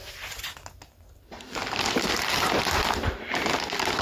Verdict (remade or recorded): recorded